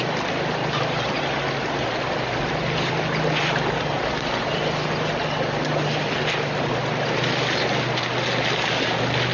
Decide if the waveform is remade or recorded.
recorded